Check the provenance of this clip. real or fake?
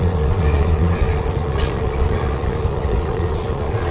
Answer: fake